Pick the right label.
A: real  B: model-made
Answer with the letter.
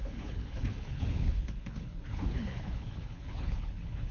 B